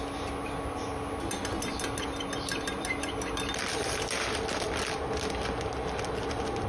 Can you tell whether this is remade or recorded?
recorded